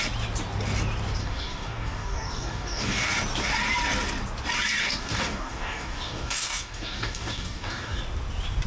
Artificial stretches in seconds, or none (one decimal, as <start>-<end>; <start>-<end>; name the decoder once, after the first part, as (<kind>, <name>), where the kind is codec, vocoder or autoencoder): 1.2-3.1 (codec, DAC); 4.8-8.0